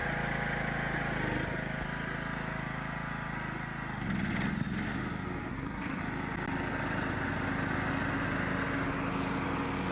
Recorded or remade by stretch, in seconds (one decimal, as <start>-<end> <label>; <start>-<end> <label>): 0.0-5.5 recorded; 5.5-6.0 remade; 6.0-9.9 recorded